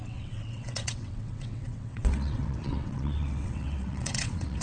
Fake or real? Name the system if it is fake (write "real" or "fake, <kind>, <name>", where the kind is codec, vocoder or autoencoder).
fake, vocoder, WaveNeXt